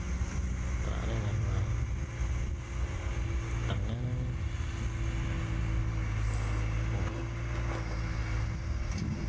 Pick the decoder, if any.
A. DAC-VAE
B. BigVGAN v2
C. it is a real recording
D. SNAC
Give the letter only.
C